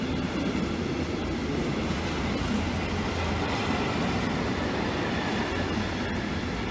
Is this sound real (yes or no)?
yes